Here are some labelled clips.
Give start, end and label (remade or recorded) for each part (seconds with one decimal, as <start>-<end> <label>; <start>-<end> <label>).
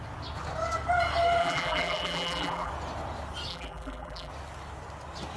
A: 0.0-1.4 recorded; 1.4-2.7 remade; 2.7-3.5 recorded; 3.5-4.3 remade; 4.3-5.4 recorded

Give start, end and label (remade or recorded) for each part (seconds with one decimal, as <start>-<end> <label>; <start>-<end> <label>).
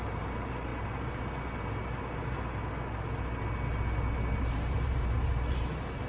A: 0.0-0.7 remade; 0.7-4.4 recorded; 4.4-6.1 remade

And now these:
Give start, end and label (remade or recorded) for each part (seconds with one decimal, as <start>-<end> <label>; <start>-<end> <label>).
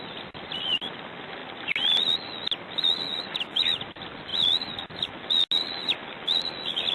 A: 0.0-6.9 recorded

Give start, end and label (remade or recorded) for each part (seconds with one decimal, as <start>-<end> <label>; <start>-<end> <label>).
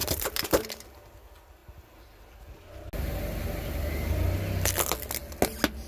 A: 0.0-0.7 remade; 0.7-5.9 recorded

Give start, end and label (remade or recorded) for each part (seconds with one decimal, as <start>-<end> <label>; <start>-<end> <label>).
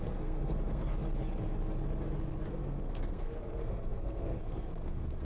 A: 0.0-1.0 remade; 1.0-2.5 recorded; 2.5-5.2 remade